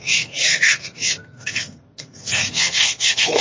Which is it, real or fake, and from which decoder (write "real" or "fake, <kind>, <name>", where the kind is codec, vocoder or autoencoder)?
fake, codec, SNAC